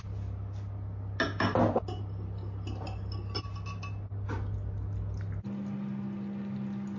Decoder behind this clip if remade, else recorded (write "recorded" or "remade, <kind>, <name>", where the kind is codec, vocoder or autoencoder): recorded